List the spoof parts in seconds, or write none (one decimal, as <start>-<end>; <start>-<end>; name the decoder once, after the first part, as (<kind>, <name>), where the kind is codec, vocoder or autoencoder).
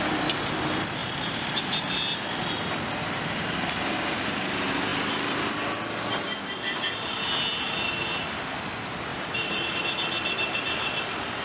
1.0-1.9 (vocoder, BigVGAN v2); 9.1-9.8